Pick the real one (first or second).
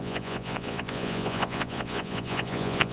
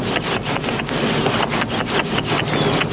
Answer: second